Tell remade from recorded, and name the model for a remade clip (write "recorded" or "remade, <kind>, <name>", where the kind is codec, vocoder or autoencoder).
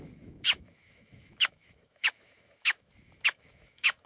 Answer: remade, autoencoder, DAC-VAE